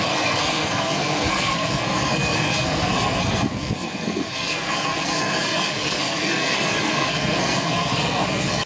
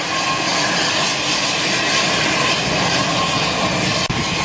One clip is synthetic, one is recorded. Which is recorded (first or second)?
second